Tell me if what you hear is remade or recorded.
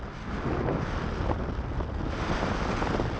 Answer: recorded